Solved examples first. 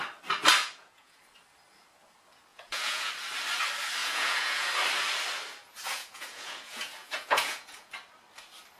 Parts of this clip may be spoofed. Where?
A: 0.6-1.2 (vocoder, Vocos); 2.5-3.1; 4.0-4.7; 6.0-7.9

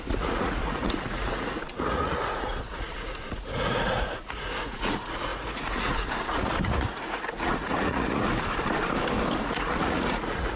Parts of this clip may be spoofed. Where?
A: 0.0-8.3 (vocoder, Vocos); 9.4-10.6

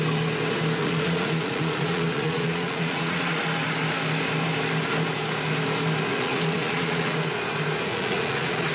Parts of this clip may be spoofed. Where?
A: 0.8-3.4 (vocoder, Vocos); 6.1-7.3; 7.9-8.7